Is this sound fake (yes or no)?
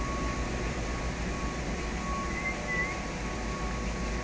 no